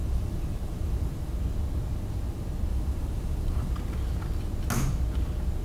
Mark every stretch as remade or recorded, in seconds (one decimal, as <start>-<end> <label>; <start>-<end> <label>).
0.0-1.3 remade; 1.3-2.7 recorded; 2.7-3.7 remade; 3.7-5.6 recorded